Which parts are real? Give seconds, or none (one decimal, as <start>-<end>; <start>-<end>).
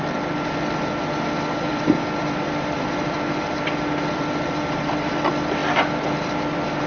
0.0-1.7; 4.8-6.9